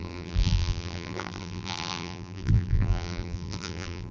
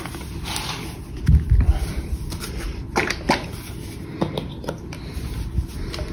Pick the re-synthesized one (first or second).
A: first